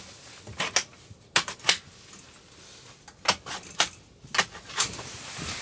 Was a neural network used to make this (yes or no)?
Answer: no